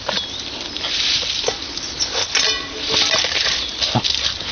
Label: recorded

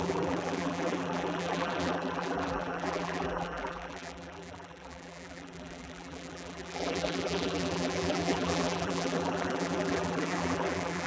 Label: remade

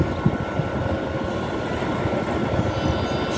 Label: recorded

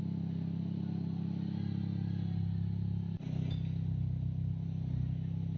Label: recorded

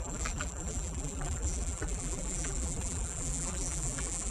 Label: remade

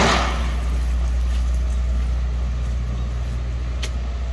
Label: recorded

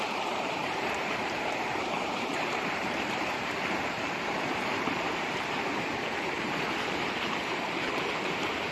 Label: remade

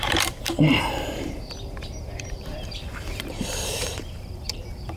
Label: remade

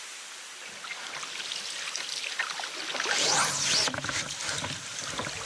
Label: recorded